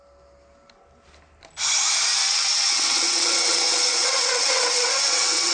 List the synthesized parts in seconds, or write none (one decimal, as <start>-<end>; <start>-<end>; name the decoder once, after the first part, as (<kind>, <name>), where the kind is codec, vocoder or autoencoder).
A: 2.2-5.5 (vocoder, WaveNeXt)